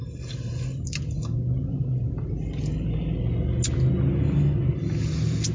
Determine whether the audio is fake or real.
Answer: real